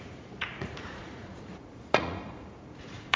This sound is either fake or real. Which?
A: fake